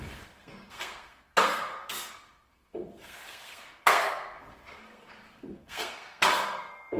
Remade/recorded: remade